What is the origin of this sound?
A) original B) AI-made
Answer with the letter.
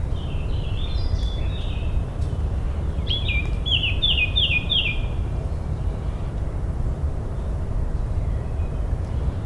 B